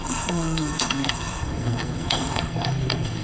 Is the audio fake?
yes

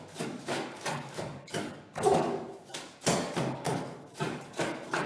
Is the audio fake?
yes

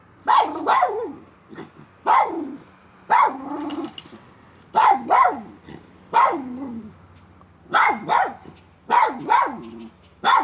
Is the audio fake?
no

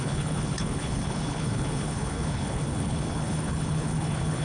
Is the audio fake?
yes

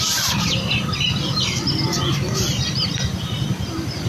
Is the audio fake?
yes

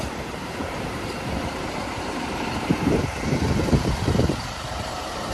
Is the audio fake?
yes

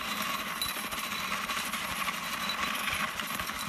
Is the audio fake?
no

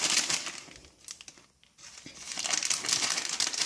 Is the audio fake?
no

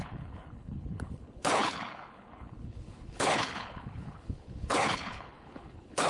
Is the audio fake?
yes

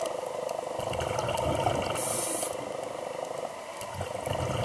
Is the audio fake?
no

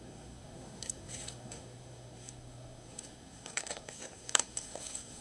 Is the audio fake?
yes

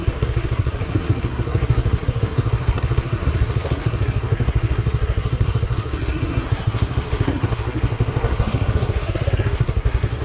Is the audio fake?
yes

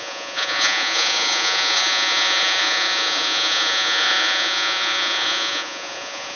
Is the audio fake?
yes